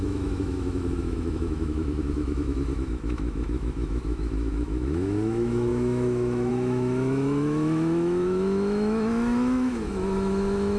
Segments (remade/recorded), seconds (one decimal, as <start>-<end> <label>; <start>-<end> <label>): 0.0-10.8 remade